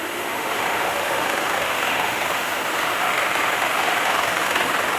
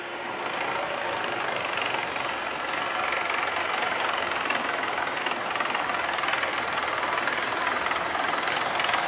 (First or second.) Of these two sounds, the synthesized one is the first